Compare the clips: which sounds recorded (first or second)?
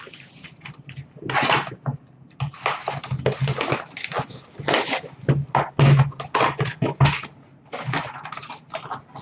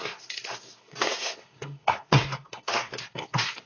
first